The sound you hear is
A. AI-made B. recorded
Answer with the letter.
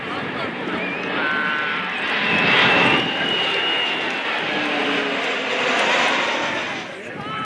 B